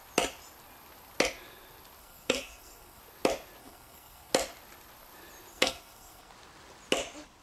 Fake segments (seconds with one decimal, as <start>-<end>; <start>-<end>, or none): 2.0-3.0; 3.6-4.3; 5.5-6.3